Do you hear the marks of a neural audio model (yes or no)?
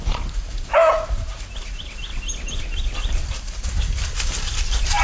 no